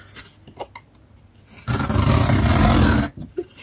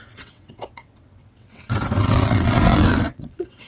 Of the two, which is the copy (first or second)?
second